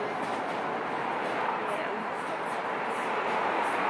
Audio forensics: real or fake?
fake